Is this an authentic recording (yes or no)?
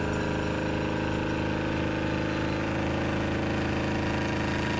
yes